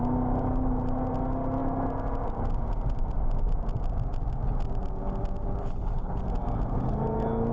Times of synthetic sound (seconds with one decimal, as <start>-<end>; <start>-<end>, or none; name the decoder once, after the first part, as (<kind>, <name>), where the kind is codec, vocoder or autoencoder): 5.6-6.2 (codec, HILCodec)